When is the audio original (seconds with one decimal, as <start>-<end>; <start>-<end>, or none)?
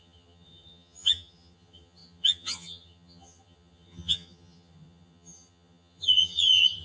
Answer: none